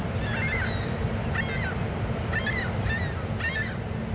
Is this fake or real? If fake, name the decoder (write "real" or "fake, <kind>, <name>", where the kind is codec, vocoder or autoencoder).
real